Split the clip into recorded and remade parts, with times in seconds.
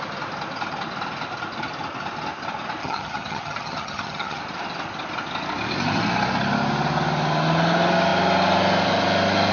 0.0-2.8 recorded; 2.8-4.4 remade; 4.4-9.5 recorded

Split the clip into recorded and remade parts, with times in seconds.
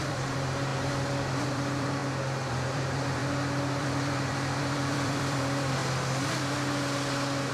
0.0-0.7 remade; 0.7-1.4 recorded; 1.4-2.0 remade; 2.0-2.5 recorded; 2.5-3.2 remade; 3.2-3.8 recorded; 3.8-5.8 remade; 5.8-7.5 recorded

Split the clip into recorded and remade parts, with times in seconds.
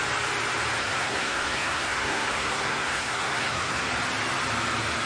0.0-0.8 recorded; 0.8-3.9 remade; 3.9-5.1 recorded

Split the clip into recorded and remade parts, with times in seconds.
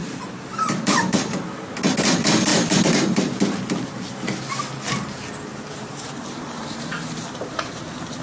0.0-1.3 remade; 1.3-2.5 recorded; 2.5-3.3 remade; 3.3-5.5 recorded; 5.5-8.2 remade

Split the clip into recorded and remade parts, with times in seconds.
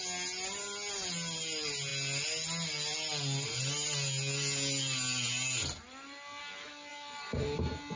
0.0-6.9 recorded; 6.9-7.6 remade; 7.6-8.0 recorded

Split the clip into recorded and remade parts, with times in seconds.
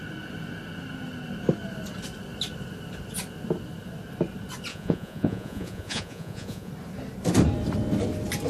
0.0-4.7 recorded; 4.7-6.7 remade; 6.7-8.5 recorded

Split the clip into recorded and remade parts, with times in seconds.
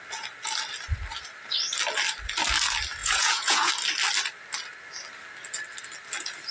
0.0-3.0 recorded; 3.0-3.7 remade; 3.7-6.5 recorded